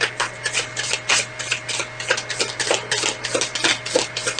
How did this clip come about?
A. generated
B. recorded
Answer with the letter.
B